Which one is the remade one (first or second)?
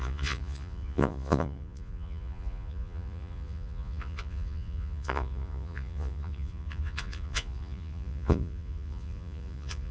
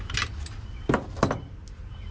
first